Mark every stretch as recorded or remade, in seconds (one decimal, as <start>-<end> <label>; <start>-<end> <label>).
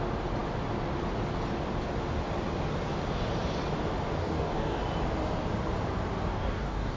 0.0-4.2 recorded; 4.2-4.8 remade; 4.8-6.3 recorded; 6.3-7.0 remade